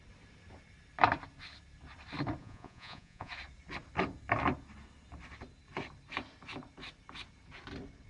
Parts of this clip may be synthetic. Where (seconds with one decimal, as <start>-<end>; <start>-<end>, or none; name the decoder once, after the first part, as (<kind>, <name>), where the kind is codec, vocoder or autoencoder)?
2.4-3.3 (vocoder, Vocos)